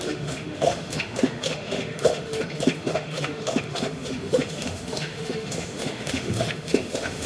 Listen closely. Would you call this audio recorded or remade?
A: remade